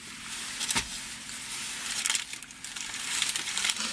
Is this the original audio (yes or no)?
yes